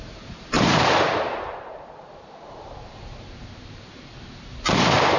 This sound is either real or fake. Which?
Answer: fake